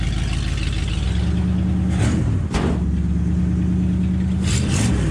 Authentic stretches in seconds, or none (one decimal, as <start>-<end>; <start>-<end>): 0.0-5.1